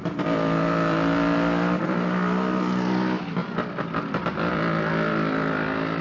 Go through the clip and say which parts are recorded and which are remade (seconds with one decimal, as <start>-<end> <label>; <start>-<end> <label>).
0.0-6.0 recorded